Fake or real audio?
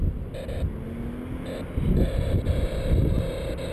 real